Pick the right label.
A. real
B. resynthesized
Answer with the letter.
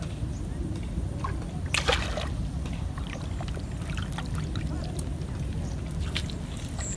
A